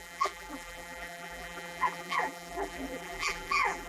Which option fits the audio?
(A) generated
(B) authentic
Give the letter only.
A